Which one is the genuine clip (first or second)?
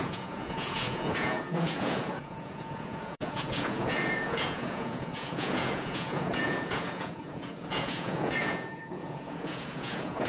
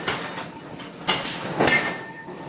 second